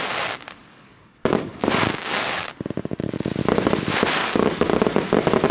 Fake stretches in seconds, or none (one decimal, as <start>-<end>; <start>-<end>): 0.6-2.5; 4.2-4.8